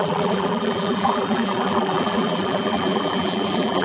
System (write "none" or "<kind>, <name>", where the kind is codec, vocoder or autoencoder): vocoder, BigVGAN v2